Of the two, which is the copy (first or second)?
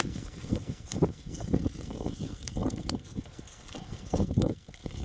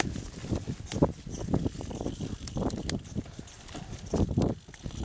first